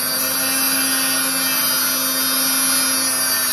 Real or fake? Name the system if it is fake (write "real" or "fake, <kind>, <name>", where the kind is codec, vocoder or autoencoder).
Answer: real